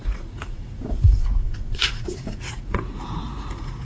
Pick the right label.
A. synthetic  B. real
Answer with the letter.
A